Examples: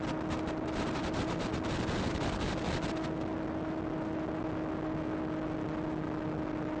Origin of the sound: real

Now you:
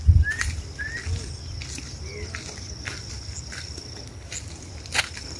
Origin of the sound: real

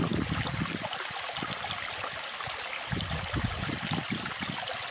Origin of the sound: real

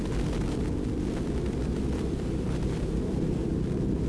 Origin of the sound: real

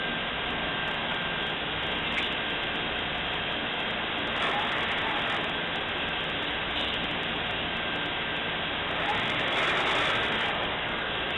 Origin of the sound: real